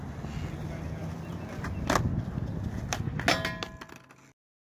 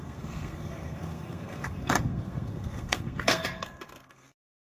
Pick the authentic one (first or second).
first